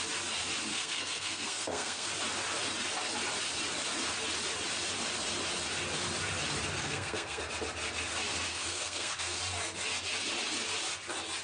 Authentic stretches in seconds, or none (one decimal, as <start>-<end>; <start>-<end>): 0.0-0.7; 2.1-6.8; 7.4-8.5; 9.4-11.4